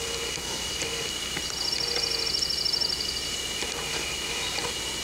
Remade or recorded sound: recorded